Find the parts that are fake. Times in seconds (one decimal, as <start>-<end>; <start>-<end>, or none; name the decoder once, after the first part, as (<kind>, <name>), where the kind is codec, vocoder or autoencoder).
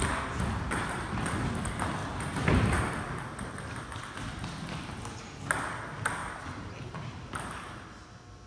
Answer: 2.0-4.0 (vocoder, BigVGAN v2); 6.2-7.2